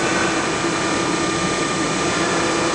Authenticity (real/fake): real